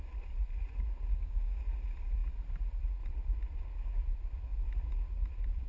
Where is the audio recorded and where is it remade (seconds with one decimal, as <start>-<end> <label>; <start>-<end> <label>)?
0.0-1.1 recorded; 1.1-1.6 remade; 1.6-5.7 recorded